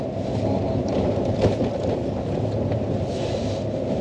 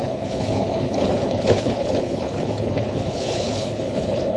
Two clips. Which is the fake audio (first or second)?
second